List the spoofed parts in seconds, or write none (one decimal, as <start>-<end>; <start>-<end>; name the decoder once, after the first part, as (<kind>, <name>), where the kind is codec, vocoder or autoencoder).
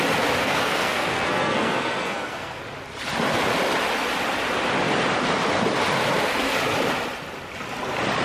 0.4-2.6 (codec, SNAC)